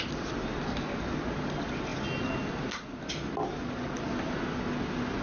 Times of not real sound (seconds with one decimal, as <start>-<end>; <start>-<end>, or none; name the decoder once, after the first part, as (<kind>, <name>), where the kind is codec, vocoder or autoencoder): none